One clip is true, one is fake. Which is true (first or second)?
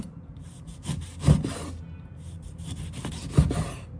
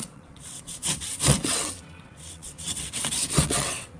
first